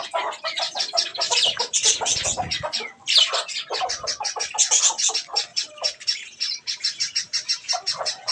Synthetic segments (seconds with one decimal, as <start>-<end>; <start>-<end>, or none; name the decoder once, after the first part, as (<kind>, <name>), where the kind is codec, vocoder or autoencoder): 1.1-1.6 (vocoder, BigVGAN v2); 5.5-8.3